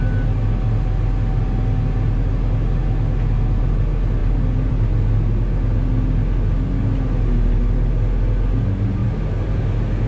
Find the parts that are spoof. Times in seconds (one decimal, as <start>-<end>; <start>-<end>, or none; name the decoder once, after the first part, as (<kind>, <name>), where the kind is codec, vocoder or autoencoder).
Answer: 4.2-4.8 (vocoder, BigVGAN v2); 9.0-9.6

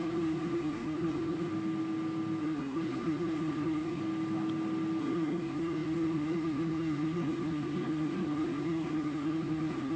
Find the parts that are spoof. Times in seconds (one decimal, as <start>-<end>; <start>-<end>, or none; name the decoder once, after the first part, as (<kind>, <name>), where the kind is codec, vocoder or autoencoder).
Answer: 0.0-1.5 (codec, SNAC); 2.4-4.0; 5.0-10.0